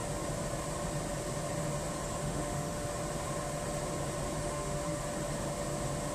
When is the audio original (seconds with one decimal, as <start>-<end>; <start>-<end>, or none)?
0.0-2.2; 2.9-4.4; 5.0-6.1